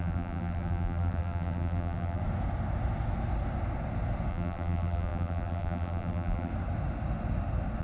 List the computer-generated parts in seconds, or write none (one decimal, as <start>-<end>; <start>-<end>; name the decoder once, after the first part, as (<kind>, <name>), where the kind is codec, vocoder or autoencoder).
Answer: 0.0-2.2 (vocoder, BigVGAN v2); 4.3-6.5